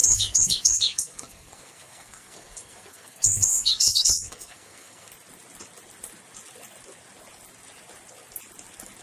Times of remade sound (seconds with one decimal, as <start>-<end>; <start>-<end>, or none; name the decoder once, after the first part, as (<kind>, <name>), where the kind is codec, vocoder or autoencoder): 0.0-5.1 (codec, SNAC)